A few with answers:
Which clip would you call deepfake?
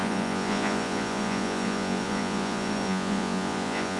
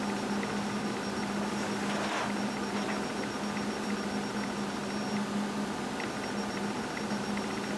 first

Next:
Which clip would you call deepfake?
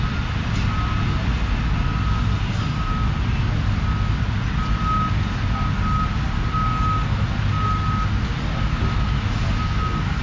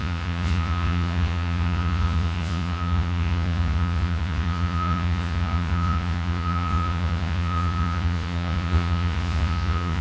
second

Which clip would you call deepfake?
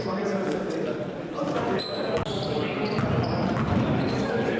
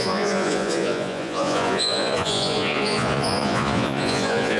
second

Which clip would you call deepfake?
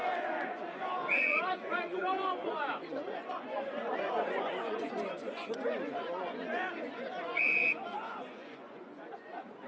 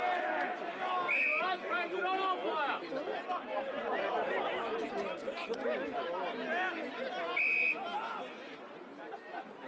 first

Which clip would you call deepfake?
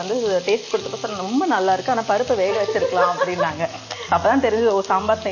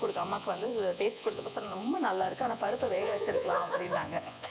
second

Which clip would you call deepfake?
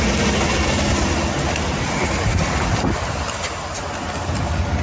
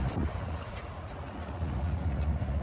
second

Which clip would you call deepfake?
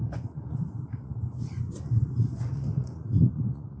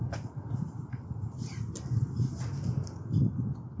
first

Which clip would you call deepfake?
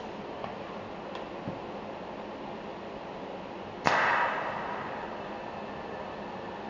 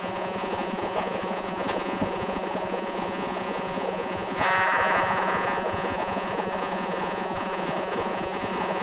second